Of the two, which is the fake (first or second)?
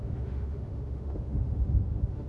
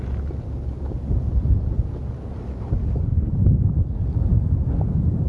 first